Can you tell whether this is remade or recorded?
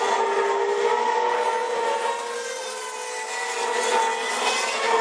recorded